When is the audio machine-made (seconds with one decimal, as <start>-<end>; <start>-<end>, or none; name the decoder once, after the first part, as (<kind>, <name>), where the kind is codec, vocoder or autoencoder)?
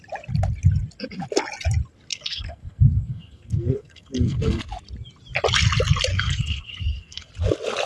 2.1-4.6 (codec, SNAC); 6.1-7.3